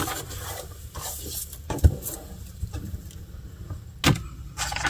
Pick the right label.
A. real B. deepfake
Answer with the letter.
A